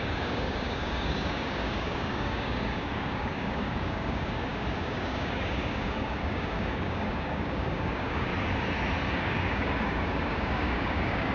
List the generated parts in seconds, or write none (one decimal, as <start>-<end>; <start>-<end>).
0.0-8.3; 9.1-11.3